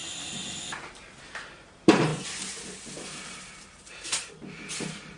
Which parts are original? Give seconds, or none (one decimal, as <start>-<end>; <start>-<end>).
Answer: 0.0-1.2